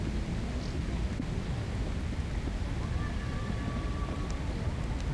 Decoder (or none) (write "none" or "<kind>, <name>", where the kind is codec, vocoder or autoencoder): none